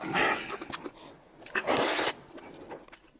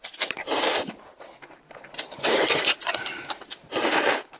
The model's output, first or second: second